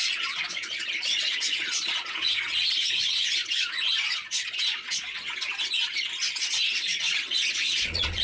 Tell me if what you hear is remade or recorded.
remade